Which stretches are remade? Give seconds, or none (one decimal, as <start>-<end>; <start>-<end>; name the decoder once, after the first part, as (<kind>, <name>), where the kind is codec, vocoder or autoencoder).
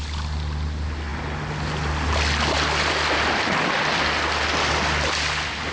none